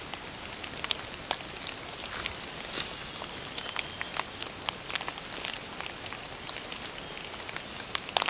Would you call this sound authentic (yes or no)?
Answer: yes